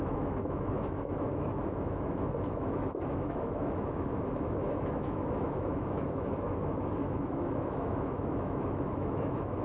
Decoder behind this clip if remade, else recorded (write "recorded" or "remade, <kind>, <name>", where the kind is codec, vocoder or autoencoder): remade, autoencoder, DAC-VAE